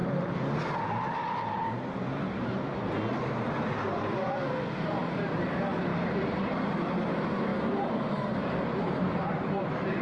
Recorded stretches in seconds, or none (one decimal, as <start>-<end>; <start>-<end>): 0.0-3.9; 4.5-5.9; 6.5-7.5; 9.5-10.0